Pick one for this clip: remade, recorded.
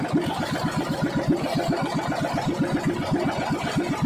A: recorded